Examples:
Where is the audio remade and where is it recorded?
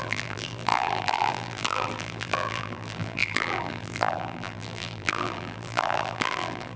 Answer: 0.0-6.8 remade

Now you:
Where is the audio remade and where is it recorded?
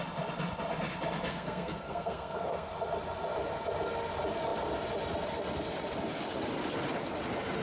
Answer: 0.0-1.3 recorded; 1.3-2.7 remade; 2.7-7.6 recorded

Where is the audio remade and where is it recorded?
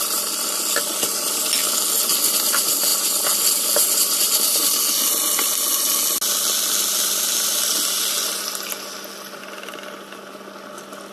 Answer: 0.0-11.1 recorded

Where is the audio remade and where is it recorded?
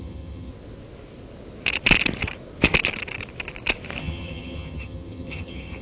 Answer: 0.0-0.5 remade; 0.5-4.0 recorded; 4.0-5.8 remade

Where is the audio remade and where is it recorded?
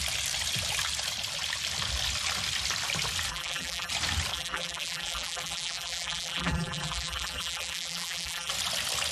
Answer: 0.0-3.3 recorded; 3.3-3.9 remade; 3.9-4.3 recorded; 4.3-8.5 remade; 8.5-9.1 recorded